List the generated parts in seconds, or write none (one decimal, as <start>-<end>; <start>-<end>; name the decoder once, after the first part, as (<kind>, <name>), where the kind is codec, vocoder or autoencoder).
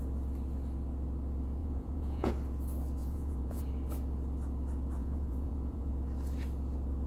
1.6-2.3 (vocoder, Vocos); 3.0-3.6; 5.0-5.9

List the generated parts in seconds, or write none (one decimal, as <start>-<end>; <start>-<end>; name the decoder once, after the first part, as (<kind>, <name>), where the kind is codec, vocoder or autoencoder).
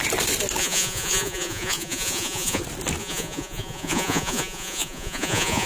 0.6-2.6 (vocoder, Vocos); 3.0-5.7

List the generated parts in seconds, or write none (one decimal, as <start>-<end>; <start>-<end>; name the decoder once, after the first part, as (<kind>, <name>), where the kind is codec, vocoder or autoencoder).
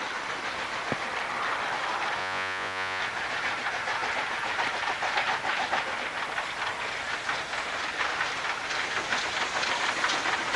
2.2-3.0 (vocoder, Vocos)